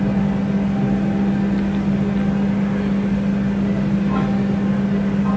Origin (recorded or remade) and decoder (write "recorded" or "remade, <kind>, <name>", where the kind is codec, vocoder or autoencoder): recorded